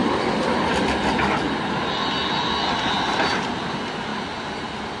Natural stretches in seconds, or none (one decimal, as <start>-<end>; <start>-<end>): 0.8-5.0